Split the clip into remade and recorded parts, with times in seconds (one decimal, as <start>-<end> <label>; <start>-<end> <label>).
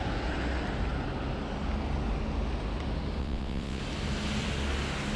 0.0-3.2 recorded; 3.2-3.8 remade; 3.8-5.2 recorded